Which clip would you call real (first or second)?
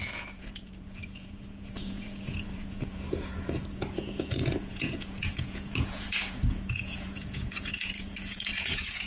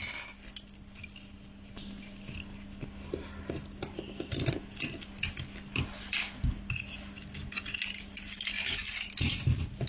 second